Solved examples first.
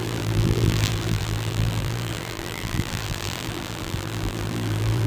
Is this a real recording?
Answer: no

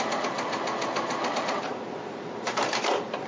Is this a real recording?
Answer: yes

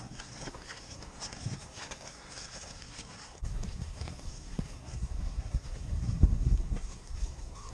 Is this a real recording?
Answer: no